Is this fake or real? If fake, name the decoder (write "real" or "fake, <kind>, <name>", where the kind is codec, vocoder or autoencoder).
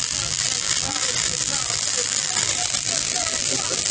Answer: fake, vocoder, BigVGAN v2